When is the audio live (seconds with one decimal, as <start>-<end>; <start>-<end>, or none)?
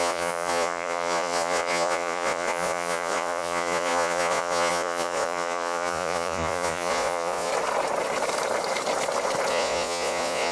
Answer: 7.5-9.5